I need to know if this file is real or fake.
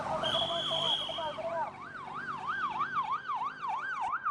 real